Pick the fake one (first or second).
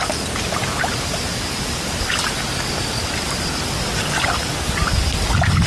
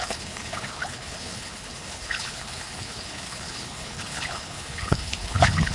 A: second